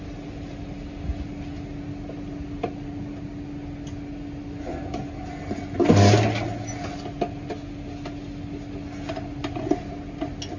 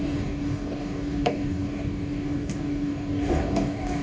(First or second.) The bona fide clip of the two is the first